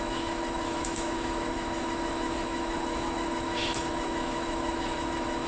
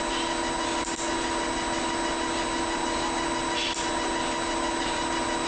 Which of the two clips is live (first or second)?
second